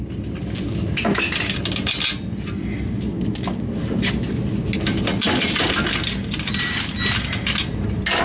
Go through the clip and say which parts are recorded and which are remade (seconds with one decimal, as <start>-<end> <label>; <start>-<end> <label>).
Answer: 0.0-8.2 recorded